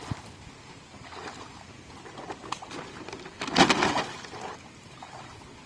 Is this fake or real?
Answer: real